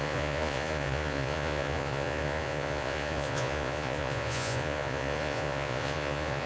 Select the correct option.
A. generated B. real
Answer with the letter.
A